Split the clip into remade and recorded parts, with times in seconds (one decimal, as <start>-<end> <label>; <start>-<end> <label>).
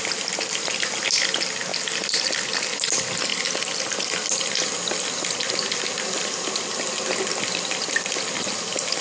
0.0-9.0 recorded